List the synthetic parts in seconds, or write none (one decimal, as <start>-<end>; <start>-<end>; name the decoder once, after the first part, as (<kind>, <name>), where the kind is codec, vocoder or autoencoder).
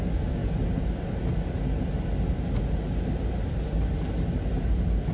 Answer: none